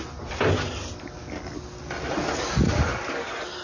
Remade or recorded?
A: recorded